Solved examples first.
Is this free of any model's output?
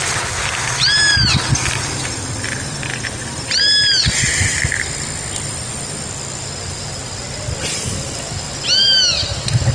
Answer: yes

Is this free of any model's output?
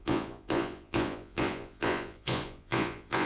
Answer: no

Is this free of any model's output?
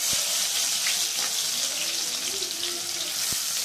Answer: yes